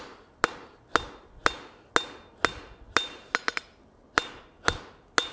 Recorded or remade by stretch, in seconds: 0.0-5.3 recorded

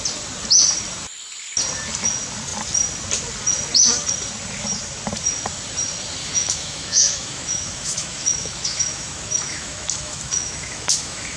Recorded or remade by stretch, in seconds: 0.0-6.2 recorded; 6.2-11.4 remade

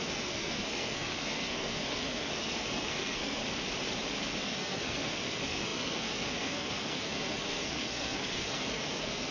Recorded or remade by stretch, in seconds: 0.0-3.4 remade; 3.4-4.4 recorded; 4.4-9.3 remade